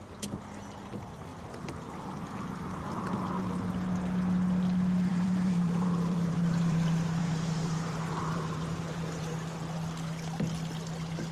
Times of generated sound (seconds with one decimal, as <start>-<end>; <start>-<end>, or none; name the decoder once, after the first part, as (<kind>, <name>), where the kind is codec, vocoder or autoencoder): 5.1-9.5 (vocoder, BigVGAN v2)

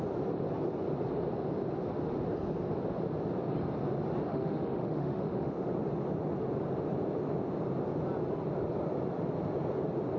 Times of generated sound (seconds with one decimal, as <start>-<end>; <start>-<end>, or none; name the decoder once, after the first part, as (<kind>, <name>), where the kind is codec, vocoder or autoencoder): 4.3-5.7 (autoencoder, DAC-VAE)

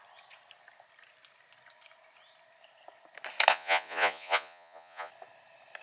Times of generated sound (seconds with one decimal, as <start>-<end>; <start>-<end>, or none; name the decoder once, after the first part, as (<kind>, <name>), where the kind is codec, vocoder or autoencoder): 3.5-5.1 (vocoder, Vocos)

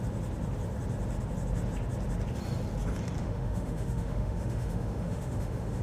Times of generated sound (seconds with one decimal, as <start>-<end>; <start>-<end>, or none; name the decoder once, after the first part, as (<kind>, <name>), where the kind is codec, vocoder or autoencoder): 3.2-5.8 (autoencoder, DAC-VAE)

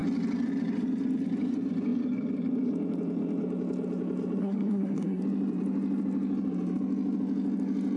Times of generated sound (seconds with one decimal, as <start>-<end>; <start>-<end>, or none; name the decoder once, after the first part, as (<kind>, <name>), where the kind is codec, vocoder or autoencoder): 4.4-5.2 (codec, SNAC)

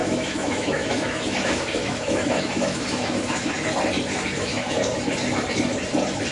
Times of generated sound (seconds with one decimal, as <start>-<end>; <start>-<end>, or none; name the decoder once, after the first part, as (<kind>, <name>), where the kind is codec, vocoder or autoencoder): 0.0-3.5 (autoencoder, DAC-VAE); 4.1-5.0

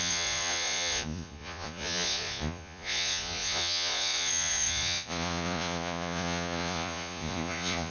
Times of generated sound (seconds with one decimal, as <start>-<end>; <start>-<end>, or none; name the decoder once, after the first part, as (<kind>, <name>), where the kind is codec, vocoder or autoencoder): 0.0-7.9 (vocoder, Vocos)

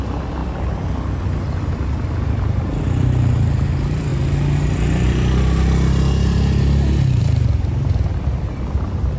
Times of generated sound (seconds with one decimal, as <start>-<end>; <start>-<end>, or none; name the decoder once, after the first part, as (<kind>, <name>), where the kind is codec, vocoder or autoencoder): none